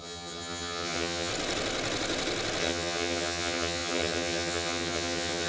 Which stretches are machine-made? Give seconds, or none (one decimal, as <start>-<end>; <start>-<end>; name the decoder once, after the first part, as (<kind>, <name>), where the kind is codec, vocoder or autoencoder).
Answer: 0.0-1.3 (vocoder, HiFi-GAN); 2.6-5.5